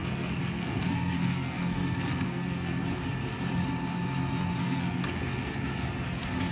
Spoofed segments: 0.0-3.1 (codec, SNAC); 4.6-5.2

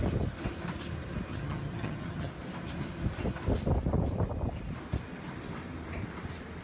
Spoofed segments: 1.3-2.3 (vocoder, HiFi-GAN)

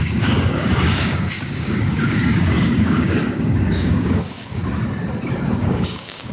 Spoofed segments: 0.0-4.6 (codec, DAC); 5.6-6.3

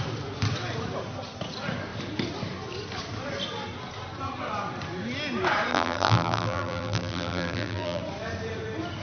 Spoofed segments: 5.7-8.0 (vocoder, BigVGAN v2)

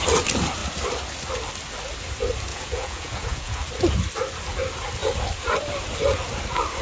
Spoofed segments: 2.5-3.6 (vocoder, Vocos)

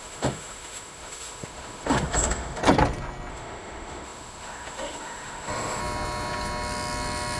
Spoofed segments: 0.0-2.6 (autoencoder, DAC-VAE); 3.3-5.8